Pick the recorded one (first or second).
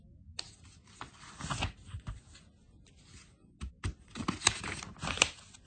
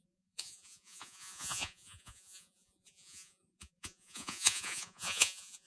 first